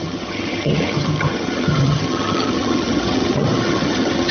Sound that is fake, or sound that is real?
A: fake